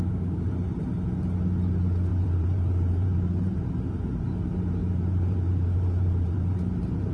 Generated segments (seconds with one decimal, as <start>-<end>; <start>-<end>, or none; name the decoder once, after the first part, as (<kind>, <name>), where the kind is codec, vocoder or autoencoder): 2.1-3.7 (vocoder, BigVGAN v2); 4.8-7.1